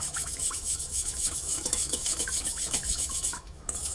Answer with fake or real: fake